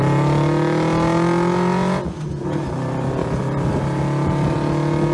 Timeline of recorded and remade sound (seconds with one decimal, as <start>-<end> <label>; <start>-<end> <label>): 0.0-3.2 recorded; 3.2-3.7 remade; 3.7-5.1 recorded